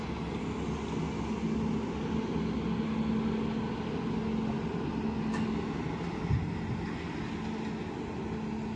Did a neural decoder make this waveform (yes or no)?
no